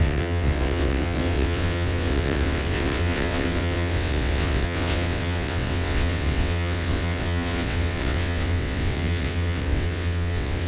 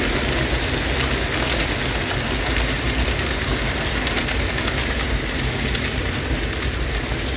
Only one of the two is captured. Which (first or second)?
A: second